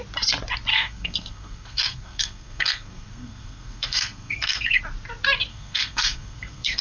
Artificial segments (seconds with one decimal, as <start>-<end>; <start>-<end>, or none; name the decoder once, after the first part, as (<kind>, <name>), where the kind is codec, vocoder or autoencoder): 0.7-4.8 (codec, SNAC); 5.5-6.8